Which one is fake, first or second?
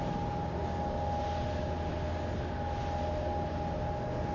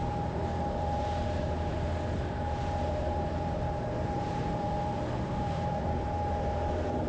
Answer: second